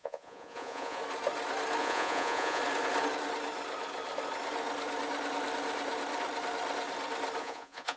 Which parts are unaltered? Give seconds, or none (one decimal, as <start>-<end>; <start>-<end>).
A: 1.0-1.8; 2.6-7.4